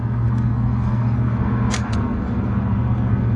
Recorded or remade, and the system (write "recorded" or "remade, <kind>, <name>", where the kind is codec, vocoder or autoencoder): remade, codec, SNAC